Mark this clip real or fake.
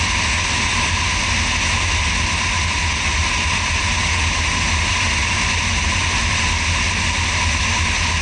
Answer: real